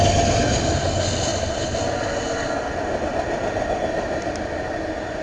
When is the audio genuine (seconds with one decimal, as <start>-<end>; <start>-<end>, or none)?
0.0-5.2